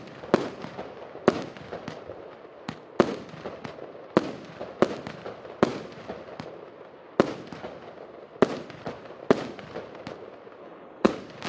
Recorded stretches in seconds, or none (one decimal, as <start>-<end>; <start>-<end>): 0.0-10.6; 11.1-11.5